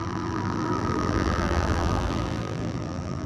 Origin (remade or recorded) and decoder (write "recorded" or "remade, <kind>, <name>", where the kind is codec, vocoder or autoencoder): remade, vocoder, BigVGAN v2